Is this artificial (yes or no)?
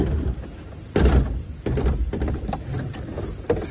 yes